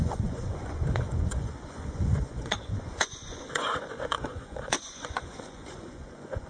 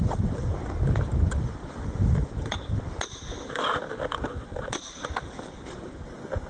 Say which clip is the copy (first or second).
first